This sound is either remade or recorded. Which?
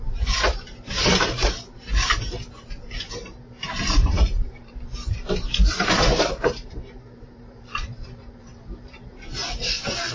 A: remade